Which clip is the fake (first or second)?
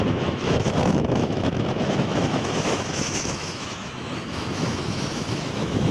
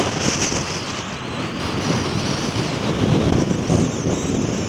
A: first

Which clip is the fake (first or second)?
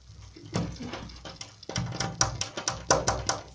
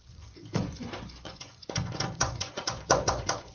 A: second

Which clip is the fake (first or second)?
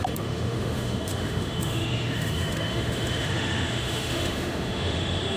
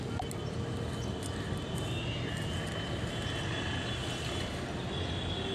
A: first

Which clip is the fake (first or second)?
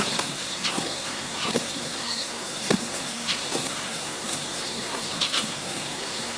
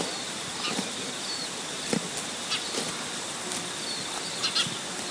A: first